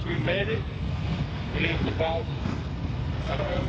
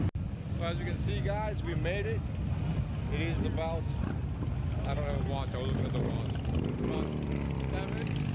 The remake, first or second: first